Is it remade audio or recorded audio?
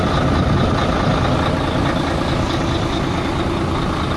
recorded